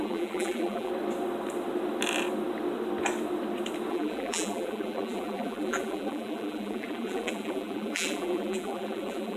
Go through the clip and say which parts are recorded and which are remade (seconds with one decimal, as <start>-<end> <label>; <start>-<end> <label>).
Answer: 0.0-0.9 remade; 0.9-3.9 recorded; 3.9-9.4 remade